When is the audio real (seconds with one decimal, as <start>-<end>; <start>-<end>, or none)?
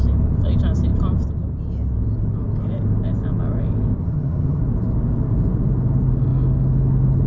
0.0-4.0; 4.6-7.3